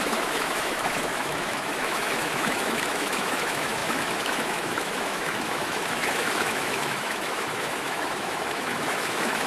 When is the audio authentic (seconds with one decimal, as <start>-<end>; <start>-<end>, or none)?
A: none

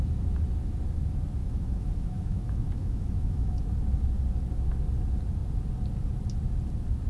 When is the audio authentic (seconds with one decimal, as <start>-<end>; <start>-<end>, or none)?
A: 0.0-1.4; 3.6-7.1

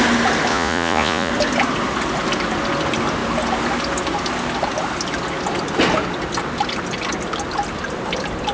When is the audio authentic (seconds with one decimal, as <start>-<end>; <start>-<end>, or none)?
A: 0.0-0.5; 1.3-8.5

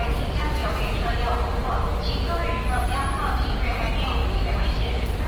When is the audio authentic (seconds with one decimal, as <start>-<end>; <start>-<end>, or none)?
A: 0.0-4.2; 4.8-5.3

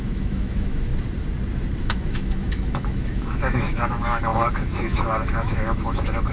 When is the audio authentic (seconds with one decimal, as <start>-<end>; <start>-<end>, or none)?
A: 0.9-1.8